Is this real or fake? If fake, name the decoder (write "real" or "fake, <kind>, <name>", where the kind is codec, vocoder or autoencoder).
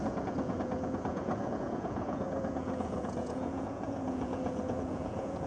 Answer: fake, vocoder, Vocos